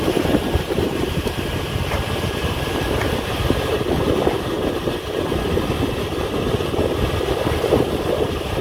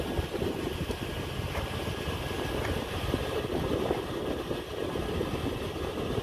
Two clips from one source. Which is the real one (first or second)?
second